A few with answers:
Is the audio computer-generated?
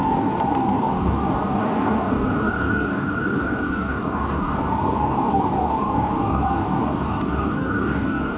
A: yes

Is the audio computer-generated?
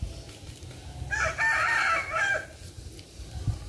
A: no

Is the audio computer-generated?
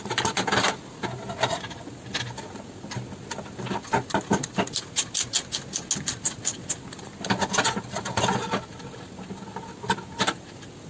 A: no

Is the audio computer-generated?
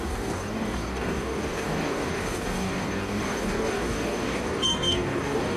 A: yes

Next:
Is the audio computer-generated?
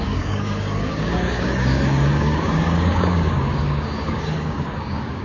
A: yes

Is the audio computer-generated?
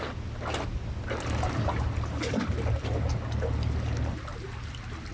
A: no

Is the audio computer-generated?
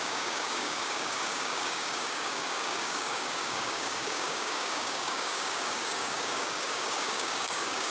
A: yes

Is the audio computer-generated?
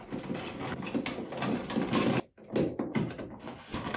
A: no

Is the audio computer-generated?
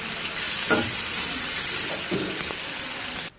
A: no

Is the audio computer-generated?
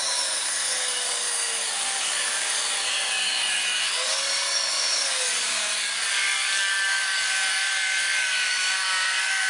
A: yes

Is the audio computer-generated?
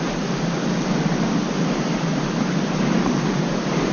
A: no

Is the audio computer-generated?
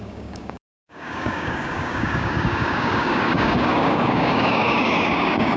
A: yes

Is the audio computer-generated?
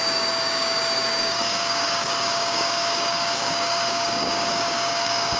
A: yes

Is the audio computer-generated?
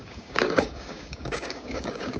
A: yes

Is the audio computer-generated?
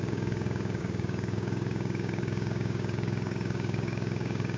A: yes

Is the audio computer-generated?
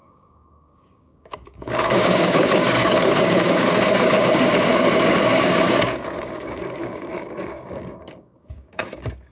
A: yes